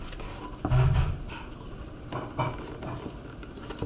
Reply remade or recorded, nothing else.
recorded